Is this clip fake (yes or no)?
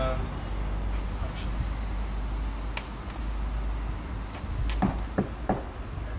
no